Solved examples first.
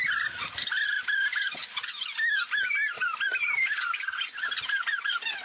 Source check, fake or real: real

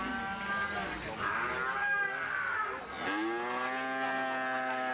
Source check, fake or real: real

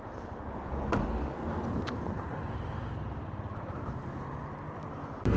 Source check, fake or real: real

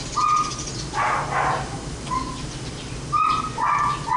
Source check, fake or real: real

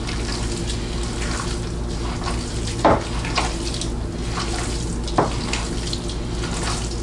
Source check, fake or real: real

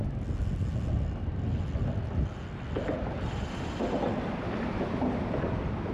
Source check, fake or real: real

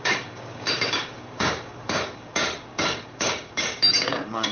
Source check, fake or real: fake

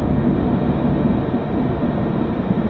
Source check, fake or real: real